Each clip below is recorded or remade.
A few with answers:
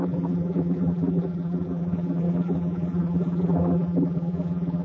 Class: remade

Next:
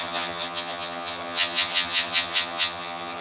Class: remade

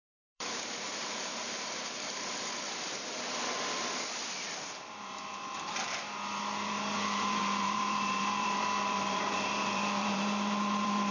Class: remade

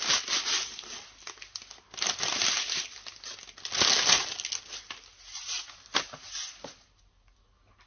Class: recorded